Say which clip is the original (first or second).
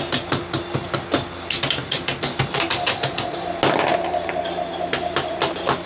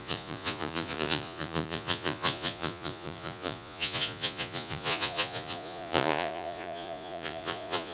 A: first